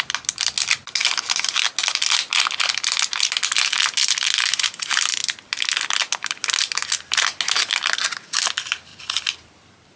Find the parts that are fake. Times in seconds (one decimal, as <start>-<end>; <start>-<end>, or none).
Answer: 1.0-1.7; 8.9-10.0